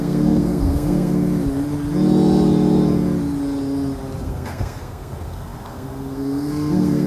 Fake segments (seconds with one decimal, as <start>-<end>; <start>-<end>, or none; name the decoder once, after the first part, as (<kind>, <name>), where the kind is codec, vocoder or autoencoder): 0.0-1.3 (codec, SNAC); 4.2-7.1